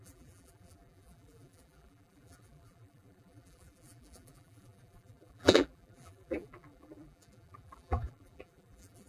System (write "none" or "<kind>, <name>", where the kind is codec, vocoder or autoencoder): vocoder, BigVGAN v2